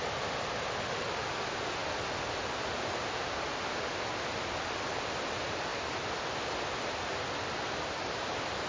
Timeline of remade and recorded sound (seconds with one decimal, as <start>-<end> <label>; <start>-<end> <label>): 0.0-8.7 recorded